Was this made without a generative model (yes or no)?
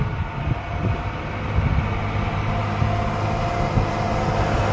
yes